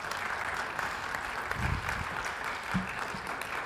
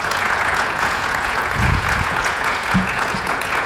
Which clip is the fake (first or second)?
second